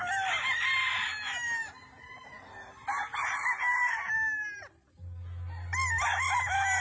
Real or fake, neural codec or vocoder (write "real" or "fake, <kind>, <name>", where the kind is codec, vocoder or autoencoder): real